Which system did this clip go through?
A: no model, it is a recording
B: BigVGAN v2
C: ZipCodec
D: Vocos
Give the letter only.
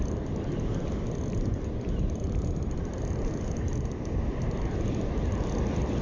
A